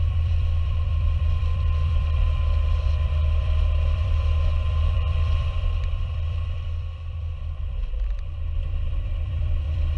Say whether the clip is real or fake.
fake